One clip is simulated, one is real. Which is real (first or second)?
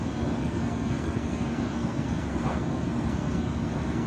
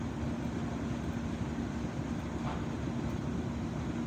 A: second